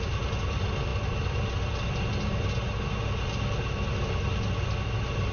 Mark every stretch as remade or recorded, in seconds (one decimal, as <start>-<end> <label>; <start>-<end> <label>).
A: 0.0-5.3 recorded